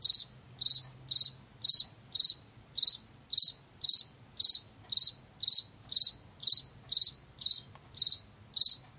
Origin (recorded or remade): recorded